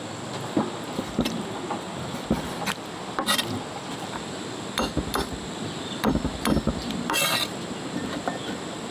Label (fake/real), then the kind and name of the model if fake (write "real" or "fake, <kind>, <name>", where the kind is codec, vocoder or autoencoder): fake, vocoder, BigVGAN v2